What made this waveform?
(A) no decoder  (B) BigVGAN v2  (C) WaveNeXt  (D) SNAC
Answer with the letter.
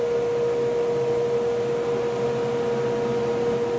A